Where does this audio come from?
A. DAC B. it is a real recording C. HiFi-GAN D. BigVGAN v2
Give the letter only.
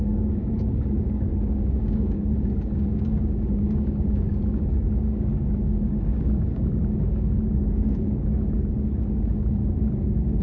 A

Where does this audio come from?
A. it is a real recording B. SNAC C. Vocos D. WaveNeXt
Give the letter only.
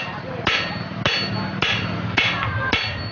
A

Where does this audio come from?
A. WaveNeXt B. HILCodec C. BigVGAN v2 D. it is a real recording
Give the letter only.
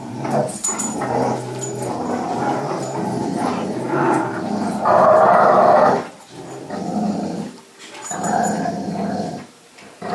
D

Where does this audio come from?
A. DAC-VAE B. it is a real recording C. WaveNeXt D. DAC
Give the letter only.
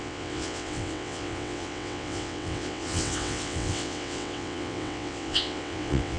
C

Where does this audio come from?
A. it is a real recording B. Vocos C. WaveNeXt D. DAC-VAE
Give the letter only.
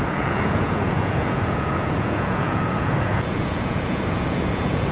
B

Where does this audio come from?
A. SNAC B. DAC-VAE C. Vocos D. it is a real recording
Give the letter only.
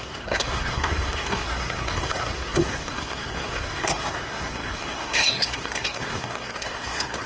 A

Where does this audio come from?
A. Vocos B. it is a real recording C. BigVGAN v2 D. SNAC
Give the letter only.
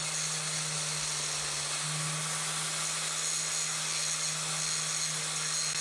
B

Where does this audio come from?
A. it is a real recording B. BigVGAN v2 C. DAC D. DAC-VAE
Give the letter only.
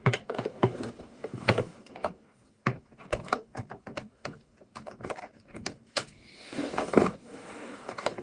C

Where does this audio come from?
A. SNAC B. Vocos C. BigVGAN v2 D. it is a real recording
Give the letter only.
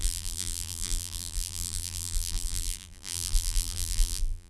C